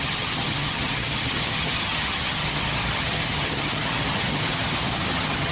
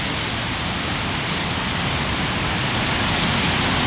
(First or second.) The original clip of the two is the second